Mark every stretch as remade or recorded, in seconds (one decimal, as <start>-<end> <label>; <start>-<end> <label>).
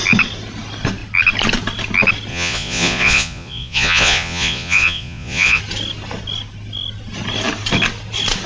0.0-2.3 recorded; 2.3-5.6 remade; 5.6-8.5 recorded